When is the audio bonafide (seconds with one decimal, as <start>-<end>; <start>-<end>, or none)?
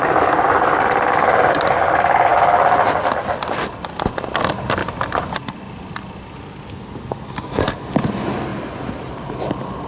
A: 0.0-9.9